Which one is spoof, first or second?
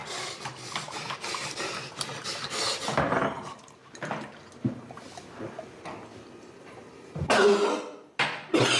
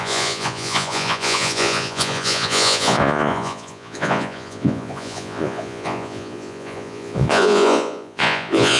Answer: second